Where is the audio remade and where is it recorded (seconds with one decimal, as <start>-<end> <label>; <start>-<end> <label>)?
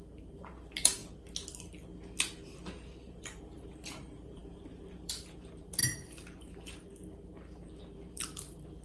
0.0-1.0 remade; 1.0-2.7 recorded; 2.7-8.8 remade